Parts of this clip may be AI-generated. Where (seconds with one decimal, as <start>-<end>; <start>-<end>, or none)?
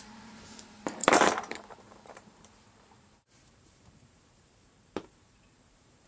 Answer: 0.0-6.1